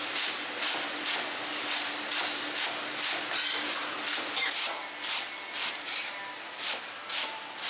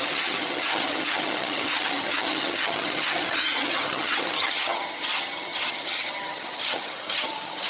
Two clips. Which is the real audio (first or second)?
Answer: first